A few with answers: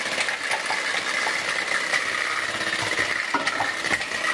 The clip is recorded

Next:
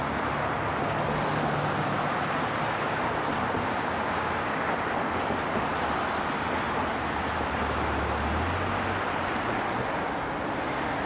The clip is recorded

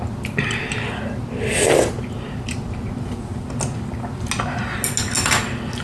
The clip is recorded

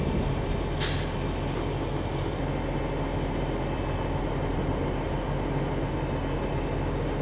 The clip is recorded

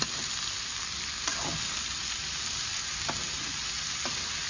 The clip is recorded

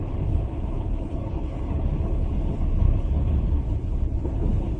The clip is remade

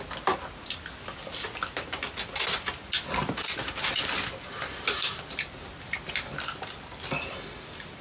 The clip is recorded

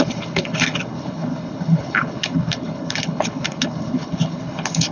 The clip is remade